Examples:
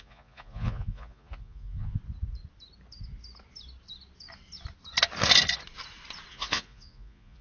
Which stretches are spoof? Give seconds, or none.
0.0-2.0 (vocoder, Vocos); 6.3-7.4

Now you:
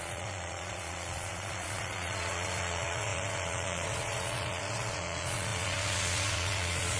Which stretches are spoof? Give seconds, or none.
0.0-7.0 (vocoder, Vocos)

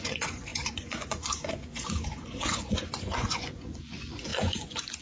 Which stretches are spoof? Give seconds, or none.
0.0-5.0 (vocoder, Vocos)